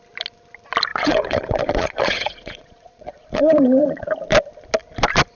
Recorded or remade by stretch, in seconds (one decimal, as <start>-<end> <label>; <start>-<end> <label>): 0.0-0.9 recorded; 0.9-4.1 remade; 4.1-5.4 recorded